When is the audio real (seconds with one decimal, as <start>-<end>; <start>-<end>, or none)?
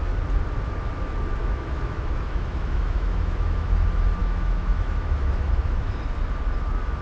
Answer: 0.0-1.4; 3.7-4.2; 6.0-7.0